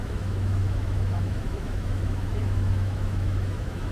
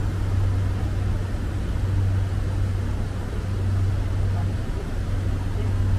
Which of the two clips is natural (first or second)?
second